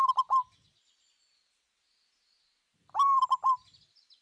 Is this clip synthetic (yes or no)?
no